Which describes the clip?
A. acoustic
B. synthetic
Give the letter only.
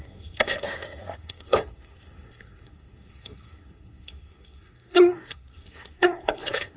B